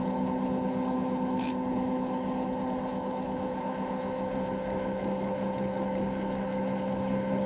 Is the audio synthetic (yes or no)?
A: yes